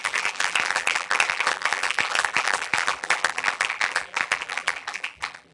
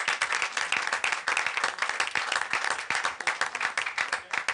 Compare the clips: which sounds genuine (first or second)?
second